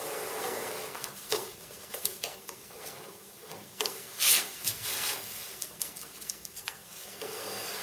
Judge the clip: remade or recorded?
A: remade